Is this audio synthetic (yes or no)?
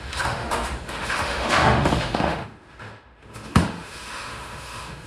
yes